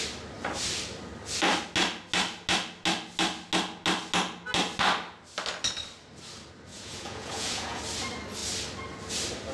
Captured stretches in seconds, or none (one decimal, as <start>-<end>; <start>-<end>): 0.0-6.7; 7.8-9.5